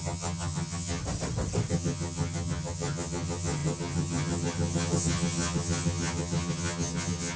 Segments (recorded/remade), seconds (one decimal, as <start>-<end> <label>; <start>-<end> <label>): 0.0-1.0 remade; 1.0-1.7 recorded; 1.7-7.4 remade